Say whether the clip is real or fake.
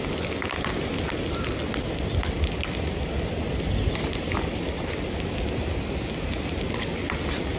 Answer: real